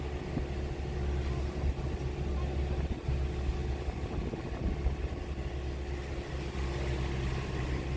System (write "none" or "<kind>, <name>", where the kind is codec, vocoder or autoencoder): none